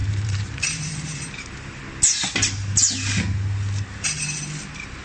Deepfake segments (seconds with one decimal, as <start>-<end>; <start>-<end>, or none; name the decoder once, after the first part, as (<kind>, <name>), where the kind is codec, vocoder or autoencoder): 0.0-1.8 (vocoder, BigVGAN v2)